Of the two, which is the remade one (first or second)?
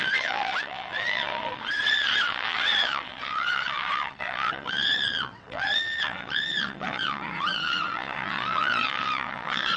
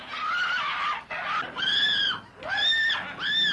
first